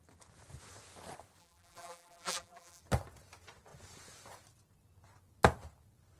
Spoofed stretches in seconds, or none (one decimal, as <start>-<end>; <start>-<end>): 1.4-2.8

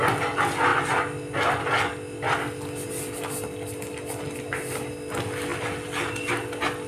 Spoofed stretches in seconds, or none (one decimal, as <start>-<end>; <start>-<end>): none